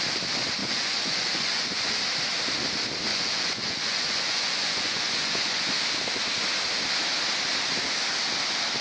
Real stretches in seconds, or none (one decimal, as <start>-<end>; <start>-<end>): 0.0-0.6; 2.0-3.1; 5.7-8.8